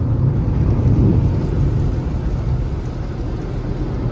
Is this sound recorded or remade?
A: recorded